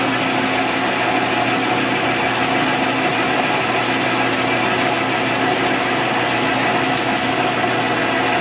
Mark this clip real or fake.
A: real